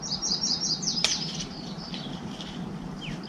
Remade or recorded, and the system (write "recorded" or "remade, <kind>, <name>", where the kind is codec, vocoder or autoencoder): remade, vocoder, BigVGAN v2